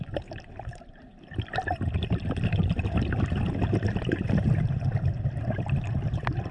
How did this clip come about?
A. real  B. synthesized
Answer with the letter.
A